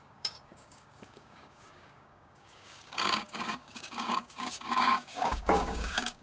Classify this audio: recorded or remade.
remade